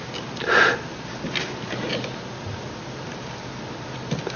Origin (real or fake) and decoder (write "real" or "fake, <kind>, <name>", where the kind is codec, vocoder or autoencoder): real